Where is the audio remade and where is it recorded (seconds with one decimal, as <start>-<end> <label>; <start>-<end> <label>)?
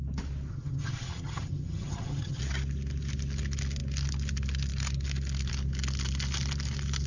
0.0-0.5 recorded; 0.5-2.4 remade; 2.4-7.1 recorded